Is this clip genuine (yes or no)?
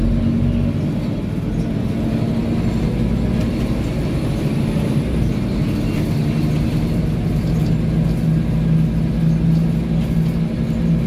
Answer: yes